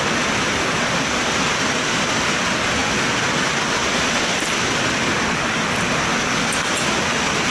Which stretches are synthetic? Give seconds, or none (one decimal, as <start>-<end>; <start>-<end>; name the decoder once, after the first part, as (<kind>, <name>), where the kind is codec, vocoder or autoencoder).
none